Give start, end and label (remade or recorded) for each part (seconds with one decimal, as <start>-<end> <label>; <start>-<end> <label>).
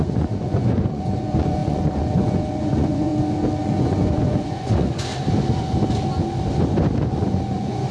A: 0.0-3.1 remade; 3.1-3.6 recorded; 3.6-5.1 remade; 5.1-7.1 recorded; 7.1-7.9 remade